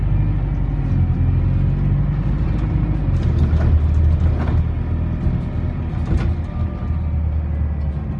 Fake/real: real